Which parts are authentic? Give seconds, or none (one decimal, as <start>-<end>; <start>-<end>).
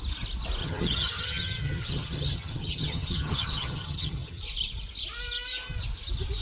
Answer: 0.0-0.6; 4.4-6.4